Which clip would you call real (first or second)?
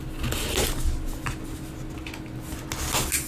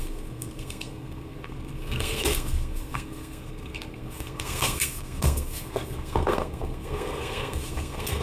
first